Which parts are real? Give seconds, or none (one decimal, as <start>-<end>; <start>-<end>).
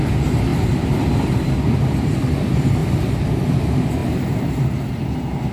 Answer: 0.0-0.5; 2.1-2.8; 3.3-4.0; 5.1-5.5